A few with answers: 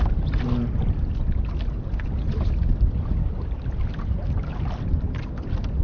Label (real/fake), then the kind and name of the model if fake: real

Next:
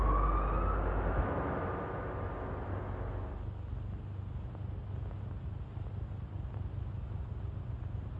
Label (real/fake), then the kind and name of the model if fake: real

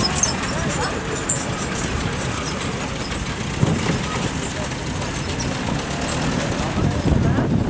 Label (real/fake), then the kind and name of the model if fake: real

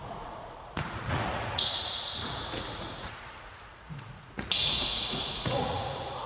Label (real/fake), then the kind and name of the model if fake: fake, vocoder, Vocos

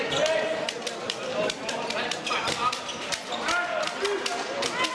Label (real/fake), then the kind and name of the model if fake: real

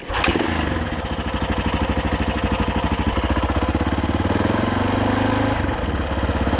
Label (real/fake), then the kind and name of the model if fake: real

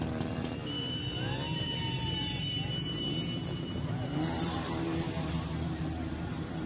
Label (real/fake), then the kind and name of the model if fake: fake, vocoder, BigVGAN v2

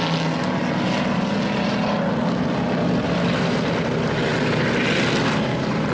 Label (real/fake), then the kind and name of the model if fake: real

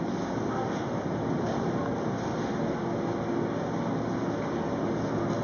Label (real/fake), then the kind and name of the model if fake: real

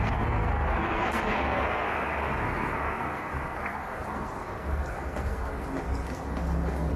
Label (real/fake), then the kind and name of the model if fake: fake, codec, SNAC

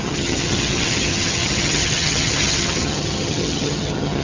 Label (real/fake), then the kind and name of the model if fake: fake, vocoder, HiFi-GAN